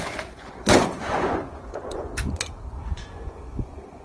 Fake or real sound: fake